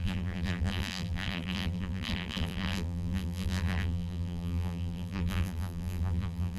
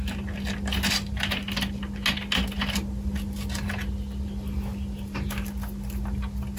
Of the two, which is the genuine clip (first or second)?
second